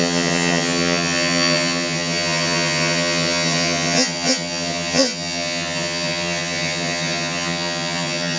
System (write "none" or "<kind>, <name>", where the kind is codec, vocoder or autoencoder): vocoder, HiFi-GAN